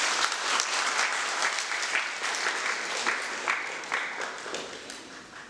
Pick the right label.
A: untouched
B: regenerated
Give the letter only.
A